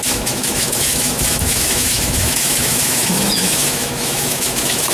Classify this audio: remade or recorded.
remade